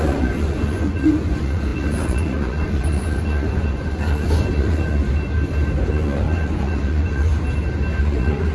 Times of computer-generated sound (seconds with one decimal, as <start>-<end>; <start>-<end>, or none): 0.0-5.0; 5.9-7.3; 8.0-8.5